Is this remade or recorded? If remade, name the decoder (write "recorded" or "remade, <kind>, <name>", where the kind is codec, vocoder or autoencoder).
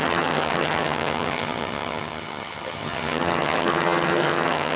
remade, vocoder, HiFi-GAN